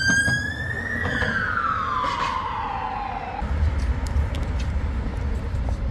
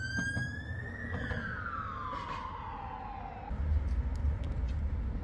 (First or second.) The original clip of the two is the second